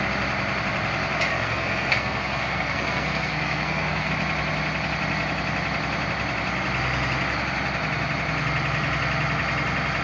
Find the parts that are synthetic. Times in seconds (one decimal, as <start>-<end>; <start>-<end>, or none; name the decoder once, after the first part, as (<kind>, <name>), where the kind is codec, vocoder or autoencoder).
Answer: 1.3-4.1 (codec, SNAC)